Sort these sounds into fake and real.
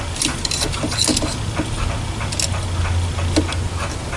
real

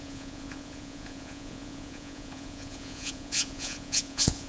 fake